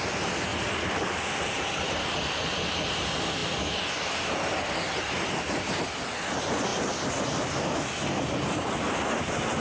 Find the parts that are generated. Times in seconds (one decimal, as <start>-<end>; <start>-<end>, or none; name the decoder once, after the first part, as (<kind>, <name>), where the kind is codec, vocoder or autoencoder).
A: none